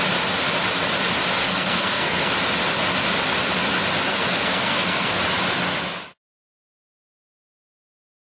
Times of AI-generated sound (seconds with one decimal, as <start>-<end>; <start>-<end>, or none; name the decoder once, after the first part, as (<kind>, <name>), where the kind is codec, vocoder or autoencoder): 1.4-2.3 (codec, SNAC); 4.1-5.2